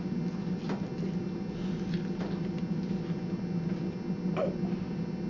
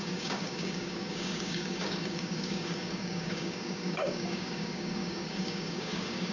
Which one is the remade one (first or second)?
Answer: second